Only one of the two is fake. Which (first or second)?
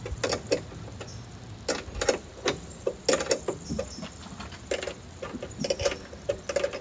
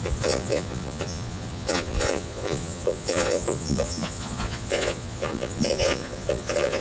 second